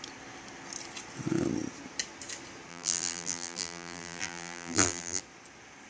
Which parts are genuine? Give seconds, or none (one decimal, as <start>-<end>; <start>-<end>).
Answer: 0.0-2.7; 5.2-5.9